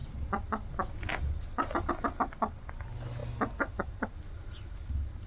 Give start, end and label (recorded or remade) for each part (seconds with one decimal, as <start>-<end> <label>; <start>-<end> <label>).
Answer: 0.0-5.3 recorded